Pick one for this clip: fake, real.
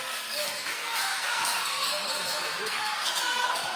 fake